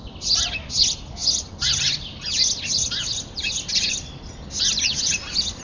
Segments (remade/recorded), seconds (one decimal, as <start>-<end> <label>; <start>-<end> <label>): 0.0-5.6 recorded